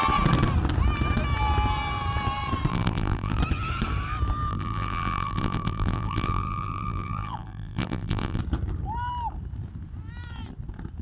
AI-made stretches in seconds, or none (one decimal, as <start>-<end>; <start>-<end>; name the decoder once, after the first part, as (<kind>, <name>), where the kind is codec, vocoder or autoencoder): 2.7-3.4 (vocoder, BigVGAN v2); 4.5-8.4